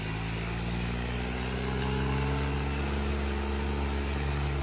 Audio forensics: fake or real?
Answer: real